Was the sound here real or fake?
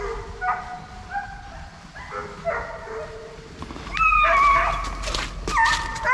real